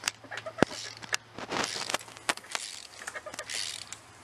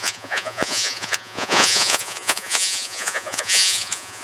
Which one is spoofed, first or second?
second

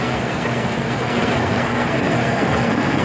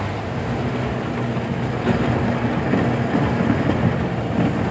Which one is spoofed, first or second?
first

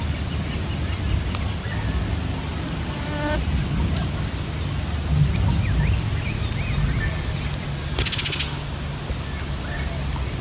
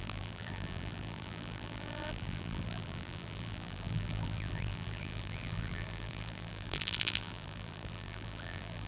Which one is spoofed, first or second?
second